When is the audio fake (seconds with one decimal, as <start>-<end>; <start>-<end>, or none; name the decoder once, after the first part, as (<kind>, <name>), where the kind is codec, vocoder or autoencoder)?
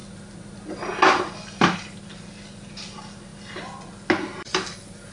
none